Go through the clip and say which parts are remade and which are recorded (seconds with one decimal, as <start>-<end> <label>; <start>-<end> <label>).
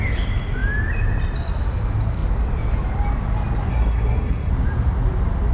0.0-3.7 recorded; 3.7-4.5 remade; 4.5-5.5 recorded